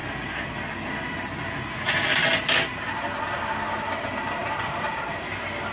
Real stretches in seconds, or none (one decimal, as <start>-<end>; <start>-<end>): 0.0-4.4; 5.2-5.7

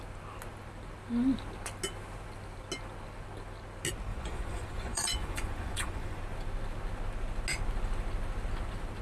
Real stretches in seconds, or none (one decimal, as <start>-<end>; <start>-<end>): 0.0-4.1; 6.2-9.0

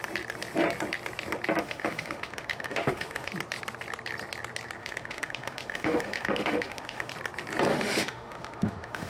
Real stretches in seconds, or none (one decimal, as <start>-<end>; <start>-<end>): 0.0-1.6; 3.3-4.8; 7.1-7.7

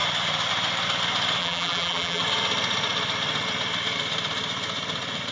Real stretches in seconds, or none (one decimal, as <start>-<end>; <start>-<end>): 0.0-1.4; 2.2-5.3

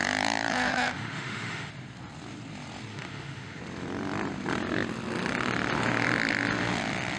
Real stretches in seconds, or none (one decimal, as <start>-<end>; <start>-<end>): 0.0-0.5; 1.7-2.9; 3.6-7.2

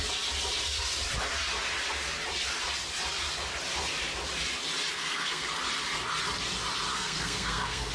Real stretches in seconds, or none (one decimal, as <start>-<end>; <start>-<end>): 0.0-5.0; 5.5-6.9

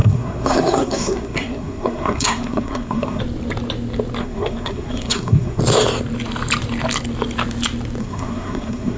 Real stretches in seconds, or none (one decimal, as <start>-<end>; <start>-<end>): 3.2-4.2; 5.6-8.0

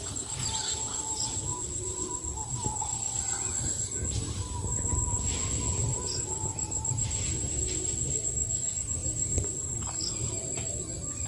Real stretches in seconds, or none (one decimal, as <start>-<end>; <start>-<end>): 0.0-11.3